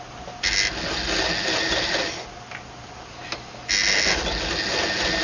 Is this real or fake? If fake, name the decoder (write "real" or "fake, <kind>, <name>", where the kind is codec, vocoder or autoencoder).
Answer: real